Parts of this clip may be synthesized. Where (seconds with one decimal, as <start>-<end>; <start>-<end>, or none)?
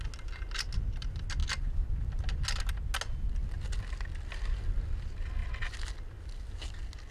none